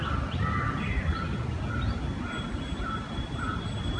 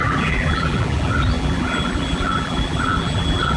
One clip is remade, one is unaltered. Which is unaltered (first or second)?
first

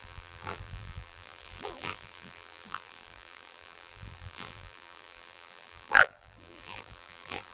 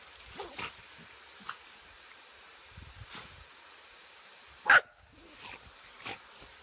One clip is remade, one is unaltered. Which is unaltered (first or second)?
second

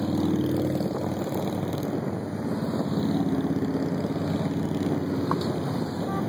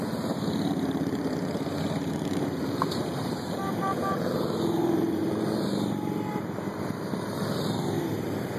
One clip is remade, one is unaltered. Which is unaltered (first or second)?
first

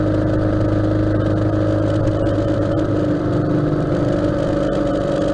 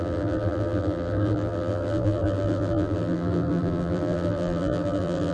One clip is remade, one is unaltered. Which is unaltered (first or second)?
first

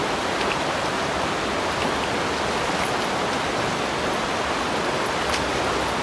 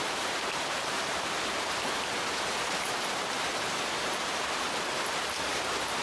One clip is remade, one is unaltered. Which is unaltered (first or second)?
first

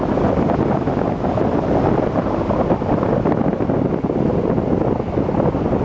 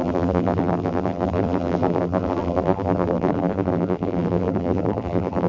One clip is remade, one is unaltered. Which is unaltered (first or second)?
first